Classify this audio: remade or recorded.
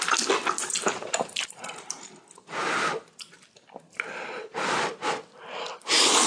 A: recorded